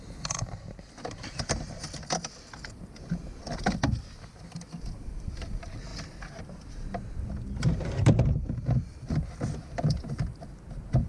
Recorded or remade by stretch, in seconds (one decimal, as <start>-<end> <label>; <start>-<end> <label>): 0.0-11.1 recorded